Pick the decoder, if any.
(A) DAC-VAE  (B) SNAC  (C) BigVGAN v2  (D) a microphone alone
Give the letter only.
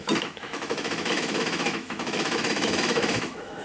A